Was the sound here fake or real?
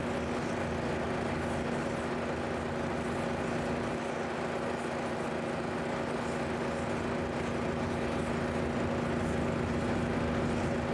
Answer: real